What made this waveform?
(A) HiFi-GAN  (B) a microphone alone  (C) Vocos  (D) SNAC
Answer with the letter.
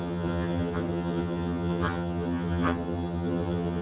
A